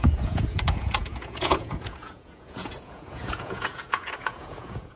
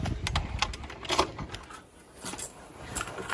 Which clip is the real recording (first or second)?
second